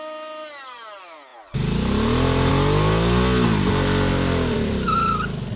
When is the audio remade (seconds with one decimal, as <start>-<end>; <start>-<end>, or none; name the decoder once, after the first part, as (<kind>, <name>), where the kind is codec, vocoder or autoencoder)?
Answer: 4.1-5.6 (vocoder, BigVGAN v2)